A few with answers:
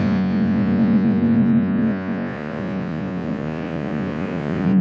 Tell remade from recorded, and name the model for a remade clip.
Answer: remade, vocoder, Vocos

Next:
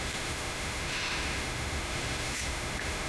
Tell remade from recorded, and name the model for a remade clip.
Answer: remade, autoencoder, DAC-VAE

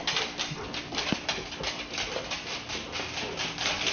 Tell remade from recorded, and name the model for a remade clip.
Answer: recorded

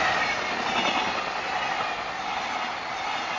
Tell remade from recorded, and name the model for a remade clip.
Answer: recorded